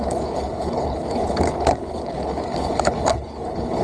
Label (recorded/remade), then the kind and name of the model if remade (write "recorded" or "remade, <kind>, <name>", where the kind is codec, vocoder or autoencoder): remade, codec, HILCodec